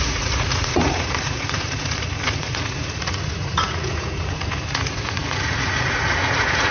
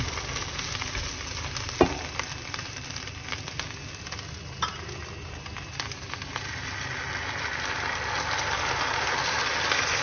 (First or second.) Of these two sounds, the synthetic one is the first